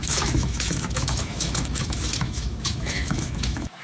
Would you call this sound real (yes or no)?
no